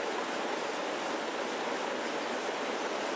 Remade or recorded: recorded